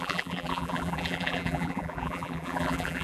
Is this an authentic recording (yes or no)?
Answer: no